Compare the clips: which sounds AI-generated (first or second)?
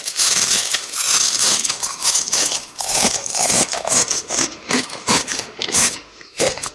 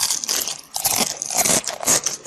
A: first